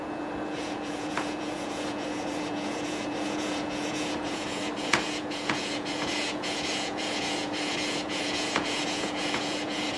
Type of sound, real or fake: fake